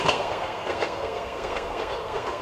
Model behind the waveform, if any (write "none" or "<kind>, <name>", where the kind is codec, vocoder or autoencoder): codec, SNAC